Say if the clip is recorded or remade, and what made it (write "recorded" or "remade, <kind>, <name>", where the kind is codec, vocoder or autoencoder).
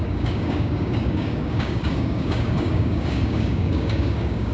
remade, codec, DAC